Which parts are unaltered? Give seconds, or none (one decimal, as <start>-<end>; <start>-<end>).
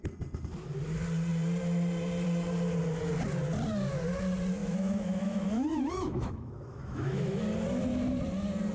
0.0-4.6; 7.4-8.7